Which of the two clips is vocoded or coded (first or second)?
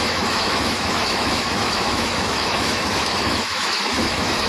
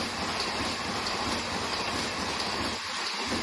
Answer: first